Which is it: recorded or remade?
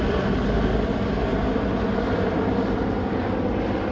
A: recorded